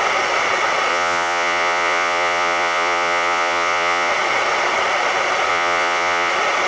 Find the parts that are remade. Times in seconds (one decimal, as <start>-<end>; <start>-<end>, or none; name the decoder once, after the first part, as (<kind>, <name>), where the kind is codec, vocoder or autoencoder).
0.9-4.1 (vocoder, Vocos); 5.5-6.3